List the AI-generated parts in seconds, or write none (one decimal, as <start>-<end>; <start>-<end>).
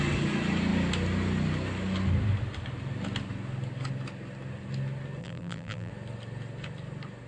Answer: 5.2-5.9